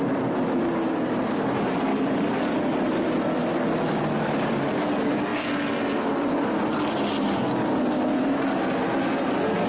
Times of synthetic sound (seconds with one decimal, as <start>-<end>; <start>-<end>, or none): 1.9-2.5